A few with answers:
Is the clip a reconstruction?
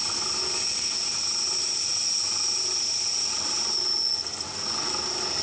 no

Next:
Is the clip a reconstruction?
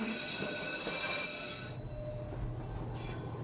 no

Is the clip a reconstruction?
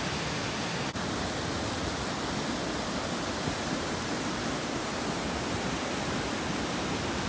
no